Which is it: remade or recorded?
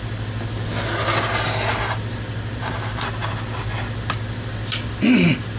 recorded